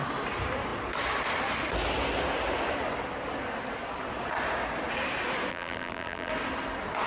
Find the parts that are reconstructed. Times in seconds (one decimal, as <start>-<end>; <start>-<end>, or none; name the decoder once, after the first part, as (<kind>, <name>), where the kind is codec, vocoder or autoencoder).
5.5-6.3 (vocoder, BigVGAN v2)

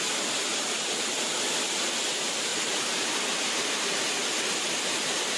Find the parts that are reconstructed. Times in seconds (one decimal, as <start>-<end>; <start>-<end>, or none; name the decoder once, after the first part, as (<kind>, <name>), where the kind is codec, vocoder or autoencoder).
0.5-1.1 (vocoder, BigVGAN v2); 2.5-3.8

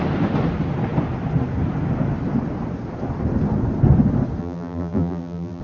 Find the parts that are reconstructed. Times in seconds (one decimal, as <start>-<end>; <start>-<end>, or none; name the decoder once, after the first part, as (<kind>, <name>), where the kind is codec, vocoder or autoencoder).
4.4-5.6 (vocoder, BigVGAN v2)